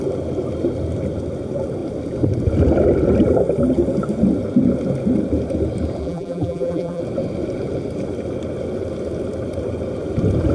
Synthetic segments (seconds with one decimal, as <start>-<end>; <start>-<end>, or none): 6.0-7.0